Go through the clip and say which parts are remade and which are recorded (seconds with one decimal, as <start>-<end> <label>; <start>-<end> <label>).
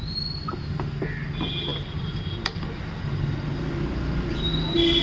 0.0-1.7 recorded; 1.7-2.8 remade; 2.8-5.0 recorded